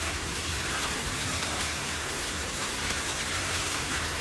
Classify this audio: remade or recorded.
remade